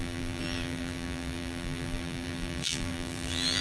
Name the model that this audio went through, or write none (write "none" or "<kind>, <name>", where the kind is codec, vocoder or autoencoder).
vocoder, BigVGAN v2